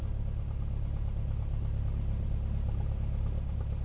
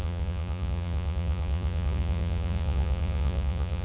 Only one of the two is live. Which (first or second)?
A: first